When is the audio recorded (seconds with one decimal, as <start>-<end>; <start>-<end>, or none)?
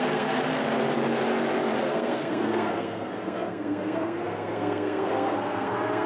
0.5-1.8